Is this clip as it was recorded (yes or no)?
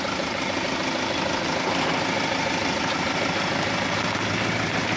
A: yes